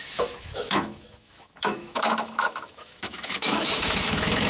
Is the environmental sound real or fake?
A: fake